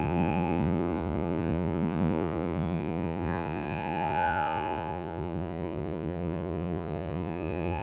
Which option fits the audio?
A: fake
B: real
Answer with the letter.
A